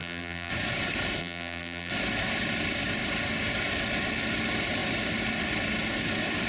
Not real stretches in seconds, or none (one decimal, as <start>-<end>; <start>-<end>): 0.0-0.5; 1.2-1.9